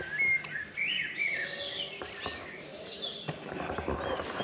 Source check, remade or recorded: recorded